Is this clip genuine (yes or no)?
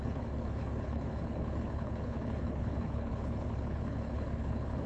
no